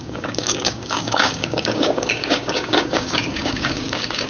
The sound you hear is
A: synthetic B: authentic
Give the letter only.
A